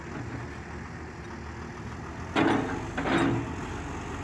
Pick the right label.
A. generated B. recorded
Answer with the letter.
B